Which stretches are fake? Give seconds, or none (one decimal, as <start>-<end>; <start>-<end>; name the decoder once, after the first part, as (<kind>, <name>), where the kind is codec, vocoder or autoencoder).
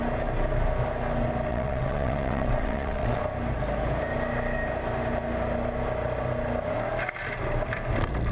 1.5-3.2 (vocoder, WaveNeXt)